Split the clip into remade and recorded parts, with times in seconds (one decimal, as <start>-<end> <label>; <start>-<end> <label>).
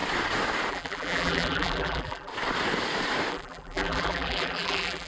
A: 0.0-0.7 recorded; 0.7-2.3 remade; 2.3-3.3 recorded; 3.3-5.1 remade